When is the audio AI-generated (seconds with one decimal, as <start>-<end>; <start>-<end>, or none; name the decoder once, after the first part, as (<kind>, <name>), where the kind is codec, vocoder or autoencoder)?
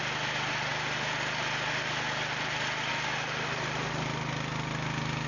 none